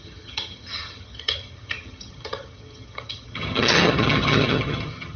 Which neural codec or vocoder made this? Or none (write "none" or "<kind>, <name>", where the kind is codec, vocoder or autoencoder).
vocoder, HiFi-GAN